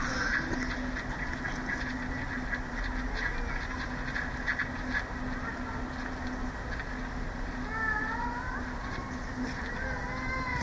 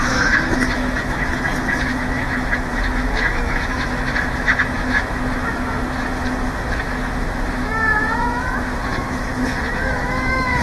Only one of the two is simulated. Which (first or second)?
second